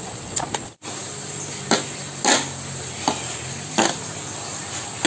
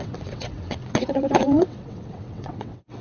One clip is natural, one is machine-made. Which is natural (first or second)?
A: first